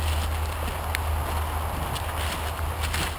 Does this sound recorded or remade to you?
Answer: recorded